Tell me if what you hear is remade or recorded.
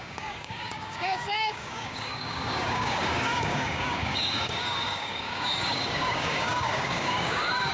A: remade